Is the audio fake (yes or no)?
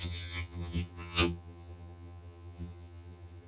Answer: yes